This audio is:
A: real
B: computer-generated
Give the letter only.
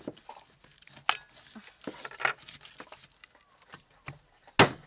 A